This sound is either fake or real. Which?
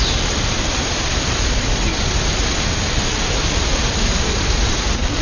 fake